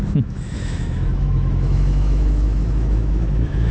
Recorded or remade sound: remade